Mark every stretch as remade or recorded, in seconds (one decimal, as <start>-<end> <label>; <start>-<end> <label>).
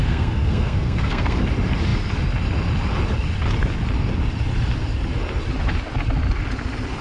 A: 0.0-1.4 remade; 1.4-7.0 recorded